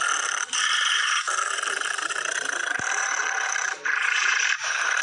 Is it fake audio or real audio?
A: fake